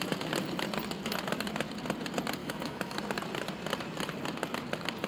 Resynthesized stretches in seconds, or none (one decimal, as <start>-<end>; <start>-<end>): 2.4-3.0